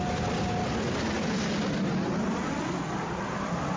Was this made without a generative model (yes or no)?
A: yes